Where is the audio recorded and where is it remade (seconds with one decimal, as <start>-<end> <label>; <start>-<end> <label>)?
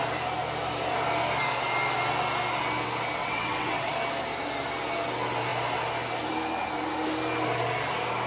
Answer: 0.0-3.2 recorded; 3.2-3.9 remade; 3.9-8.3 recorded